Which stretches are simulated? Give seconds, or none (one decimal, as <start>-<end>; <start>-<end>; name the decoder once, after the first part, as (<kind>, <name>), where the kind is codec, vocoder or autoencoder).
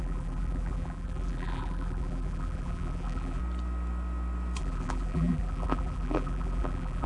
0.0-3.4 (vocoder, BigVGAN v2); 4.6-7.1